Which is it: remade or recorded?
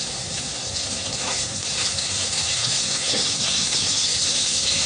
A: remade